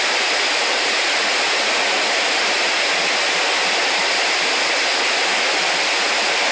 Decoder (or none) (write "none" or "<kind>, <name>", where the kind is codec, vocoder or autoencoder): none